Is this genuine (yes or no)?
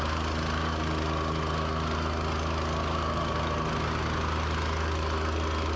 yes